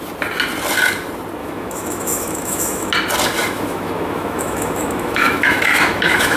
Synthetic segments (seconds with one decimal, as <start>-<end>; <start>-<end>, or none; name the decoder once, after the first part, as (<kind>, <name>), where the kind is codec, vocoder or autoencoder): 1.4-2.9 (autoencoder, DAC-VAE); 3.4-6.4

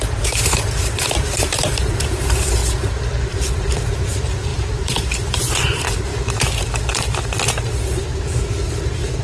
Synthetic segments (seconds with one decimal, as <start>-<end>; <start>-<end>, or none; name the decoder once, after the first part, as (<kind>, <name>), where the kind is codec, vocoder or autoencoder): 0.0-2.6 (vocoder, BigVGAN v2); 3.3-6.1; 8.7-9.2

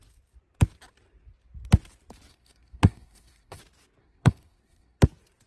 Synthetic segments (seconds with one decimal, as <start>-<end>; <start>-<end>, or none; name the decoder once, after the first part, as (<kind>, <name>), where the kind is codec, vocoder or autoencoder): 2.3-3.6 (codec, SNAC); 4.0-5.0

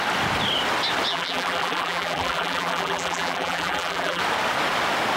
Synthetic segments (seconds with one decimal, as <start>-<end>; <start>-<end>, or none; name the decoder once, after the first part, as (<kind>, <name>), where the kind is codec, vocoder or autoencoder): 1.1-4.2 (vocoder, BigVGAN v2)

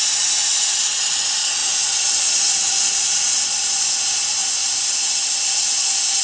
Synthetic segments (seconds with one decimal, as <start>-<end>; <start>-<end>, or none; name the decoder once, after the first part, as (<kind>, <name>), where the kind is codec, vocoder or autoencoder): none